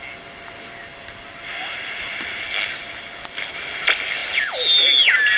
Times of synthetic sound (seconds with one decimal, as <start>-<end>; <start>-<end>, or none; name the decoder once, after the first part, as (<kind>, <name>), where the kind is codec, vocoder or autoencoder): 0.9-3.5 (vocoder, BigVGAN v2)